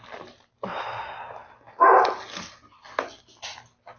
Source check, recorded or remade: recorded